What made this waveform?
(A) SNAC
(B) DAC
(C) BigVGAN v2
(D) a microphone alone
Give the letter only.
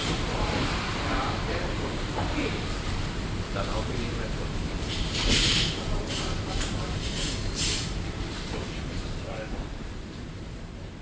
C